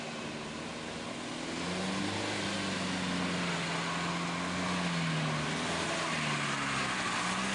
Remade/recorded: recorded